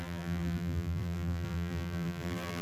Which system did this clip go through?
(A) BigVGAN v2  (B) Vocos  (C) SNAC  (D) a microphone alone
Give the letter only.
A